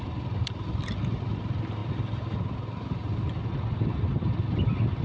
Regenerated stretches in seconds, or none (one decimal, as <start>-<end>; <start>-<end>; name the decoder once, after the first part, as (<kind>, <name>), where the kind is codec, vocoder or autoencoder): none